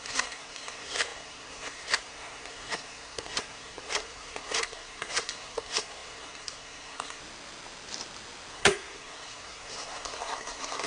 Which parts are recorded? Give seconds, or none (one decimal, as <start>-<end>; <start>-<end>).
7.2-8.5